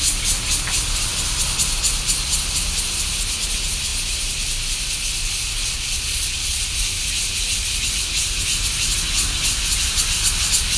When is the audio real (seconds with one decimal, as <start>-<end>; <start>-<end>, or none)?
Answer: 0.0-5.6; 6.6-10.8